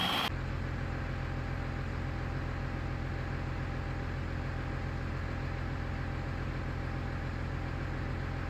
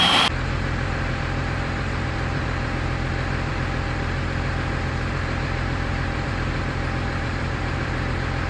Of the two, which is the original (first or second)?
first